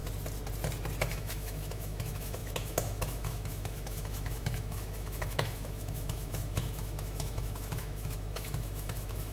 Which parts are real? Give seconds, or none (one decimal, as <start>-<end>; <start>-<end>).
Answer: 0.0-1.1